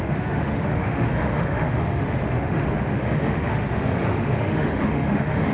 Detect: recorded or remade remade